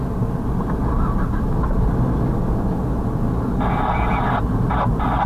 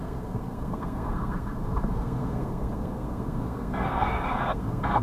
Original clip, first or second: first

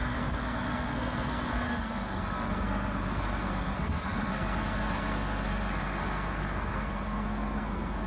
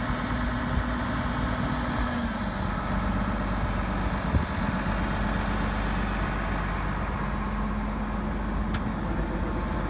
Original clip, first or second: second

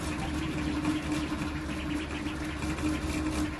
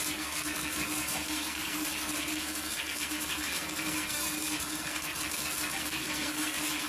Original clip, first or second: first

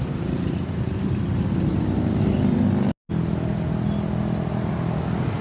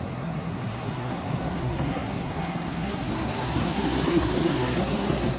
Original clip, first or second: first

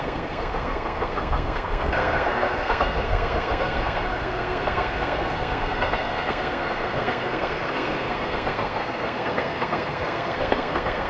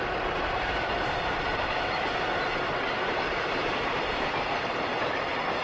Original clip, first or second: second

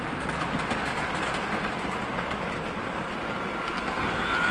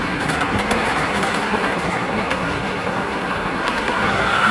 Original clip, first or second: first